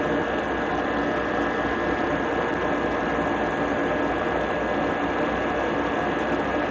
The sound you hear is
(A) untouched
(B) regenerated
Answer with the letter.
A